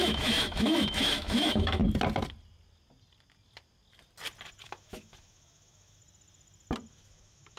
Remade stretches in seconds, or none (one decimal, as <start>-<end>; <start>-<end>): 0.0-1.8; 4.6-6.0; 6.9-7.6